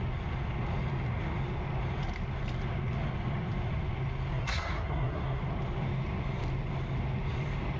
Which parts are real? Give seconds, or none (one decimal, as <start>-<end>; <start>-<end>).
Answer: 0.0-4.3; 5.4-7.8